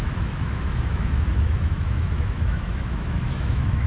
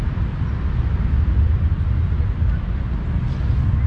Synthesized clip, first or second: first